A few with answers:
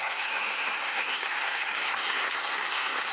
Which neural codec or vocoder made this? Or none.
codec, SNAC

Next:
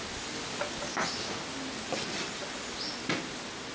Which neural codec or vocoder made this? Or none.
none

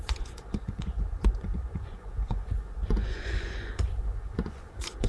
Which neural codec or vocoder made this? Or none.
vocoder, Vocos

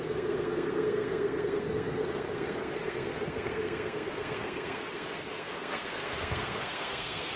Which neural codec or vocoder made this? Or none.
codec, SNAC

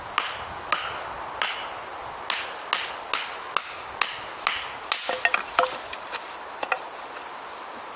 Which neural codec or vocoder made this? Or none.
none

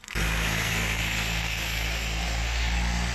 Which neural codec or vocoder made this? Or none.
codec, SNAC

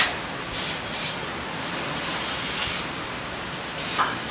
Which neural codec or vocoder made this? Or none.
none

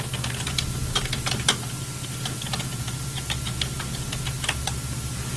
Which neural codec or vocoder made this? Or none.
none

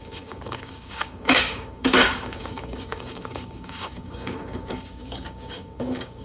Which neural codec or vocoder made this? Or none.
codec, DAC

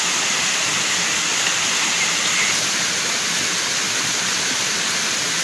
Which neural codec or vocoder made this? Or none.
none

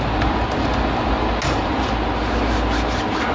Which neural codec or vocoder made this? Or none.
none